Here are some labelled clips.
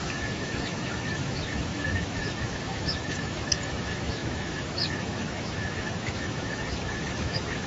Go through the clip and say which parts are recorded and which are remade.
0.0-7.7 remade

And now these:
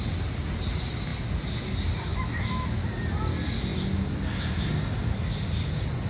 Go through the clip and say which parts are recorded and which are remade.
0.0-2.1 recorded; 2.1-2.8 remade; 2.8-6.1 recorded

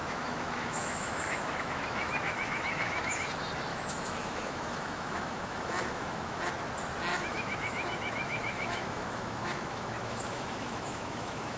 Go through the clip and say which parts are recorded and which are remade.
0.0-3.3 remade; 3.3-3.7 recorded; 3.7-6.5 remade; 6.5-7.1 recorded; 7.1-11.6 remade

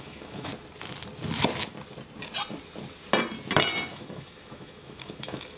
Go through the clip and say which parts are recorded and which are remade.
0.0-0.5 remade; 0.5-3.9 recorded; 3.9-5.6 remade

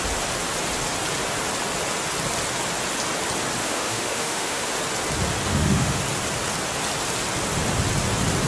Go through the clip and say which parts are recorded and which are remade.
0.0-3.6 recorded; 3.6-4.7 remade; 4.7-5.5 recorded; 5.5-6.0 remade; 6.0-8.5 recorded

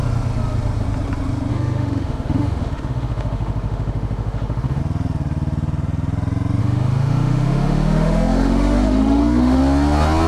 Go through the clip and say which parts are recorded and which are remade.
0.0-1.5 recorded; 1.5-4.8 remade; 4.8-6.6 recorded; 6.6-9.6 remade; 9.6-10.3 recorded

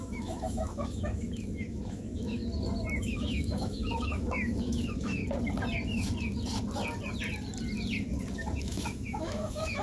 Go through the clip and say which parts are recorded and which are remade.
0.0-2.4 remade; 2.4-3.0 recorded; 3.0-5.2 remade; 5.2-8.6 recorded; 8.6-9.8 remade

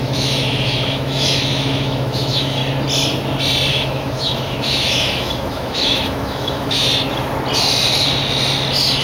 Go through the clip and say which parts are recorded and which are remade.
0.0-2.6 remade; 2.6-3.7 recorded; 3.7-6.9 remade; 6.9-9.0 recorded